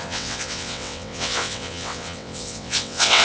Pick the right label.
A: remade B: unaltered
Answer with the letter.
A